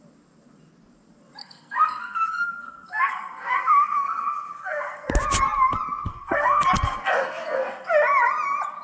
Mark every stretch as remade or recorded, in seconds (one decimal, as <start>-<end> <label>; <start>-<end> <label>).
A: 0.0-1.4 recorded; 1.4-5.1 remade; 5.1-6.1 recorded; 6.1-7.9 remade; 7.9-8.8 recorded